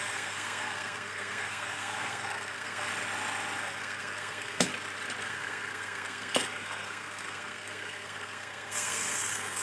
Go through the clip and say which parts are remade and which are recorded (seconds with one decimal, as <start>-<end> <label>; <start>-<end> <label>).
0.0-2.9 remade; 2.9-3.6 recorded; 3.6-4.7 remade; 4.7-5.2 recorded; 5.2-9.6 remade